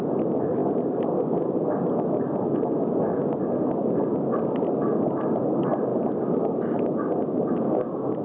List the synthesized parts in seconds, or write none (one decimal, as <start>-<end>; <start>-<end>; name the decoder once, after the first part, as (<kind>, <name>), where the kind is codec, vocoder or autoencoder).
0.6-1.4 (vocoder, BigVGAN v2)